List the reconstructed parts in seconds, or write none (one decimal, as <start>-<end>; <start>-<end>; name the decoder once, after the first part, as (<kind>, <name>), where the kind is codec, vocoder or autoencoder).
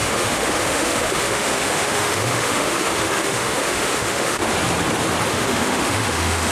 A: 0.0-4.4 (autoencoder, DAC-VAE); 5.3-6.5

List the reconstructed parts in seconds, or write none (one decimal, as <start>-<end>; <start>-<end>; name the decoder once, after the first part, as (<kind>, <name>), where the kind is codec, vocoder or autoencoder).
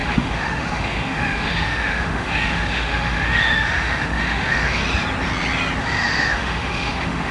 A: 0.0-4.8 (autoencoder, DAC-VAE); 5.8-7.3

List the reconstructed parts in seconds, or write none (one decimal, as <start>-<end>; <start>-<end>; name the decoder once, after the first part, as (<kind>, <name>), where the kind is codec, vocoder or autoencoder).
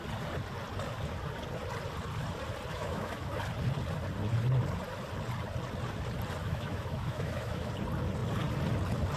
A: 2.7-3.3 (autoencoder, DAC-VAE); 6.4-7.7